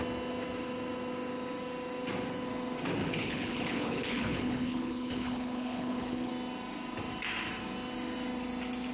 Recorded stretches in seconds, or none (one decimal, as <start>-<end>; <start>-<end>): 0.0-3.0; 6.3-8.9